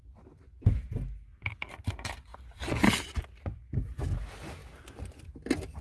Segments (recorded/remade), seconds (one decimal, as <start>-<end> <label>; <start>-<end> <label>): 0.0-5.8 recorded